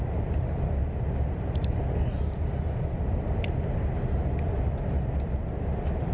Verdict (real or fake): real